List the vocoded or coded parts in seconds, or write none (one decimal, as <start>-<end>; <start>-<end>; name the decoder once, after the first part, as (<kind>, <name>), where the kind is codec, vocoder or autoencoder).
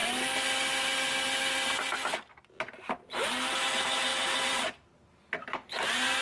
none